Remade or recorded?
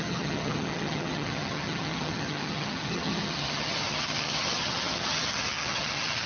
remade